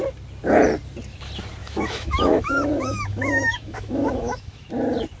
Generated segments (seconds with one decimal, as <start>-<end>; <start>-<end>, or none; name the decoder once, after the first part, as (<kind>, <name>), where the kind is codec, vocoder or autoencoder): 1.6-4.7 (autoencoder, DAC-VAE)